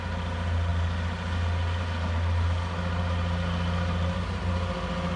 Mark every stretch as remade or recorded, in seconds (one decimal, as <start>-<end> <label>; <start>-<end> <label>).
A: 0.0-5.2 recorded